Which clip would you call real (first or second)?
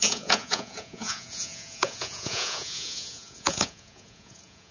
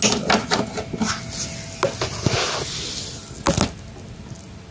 second